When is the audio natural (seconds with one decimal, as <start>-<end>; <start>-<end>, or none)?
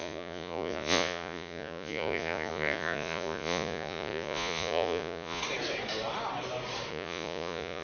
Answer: 5.4-6.9